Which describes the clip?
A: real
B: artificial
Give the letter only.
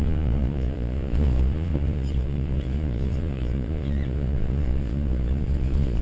B